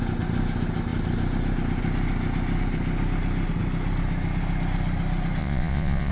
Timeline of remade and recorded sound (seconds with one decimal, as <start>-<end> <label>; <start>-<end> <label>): 0.0-5.4 recorded; 5.4-6.1 remade